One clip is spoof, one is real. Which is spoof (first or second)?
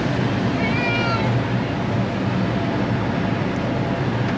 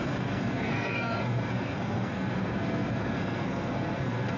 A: second